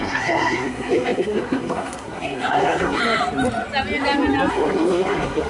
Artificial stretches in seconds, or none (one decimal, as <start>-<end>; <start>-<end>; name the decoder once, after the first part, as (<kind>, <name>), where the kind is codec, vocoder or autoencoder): 0.0-3.0 (codec, SNAC); 4.5-5.5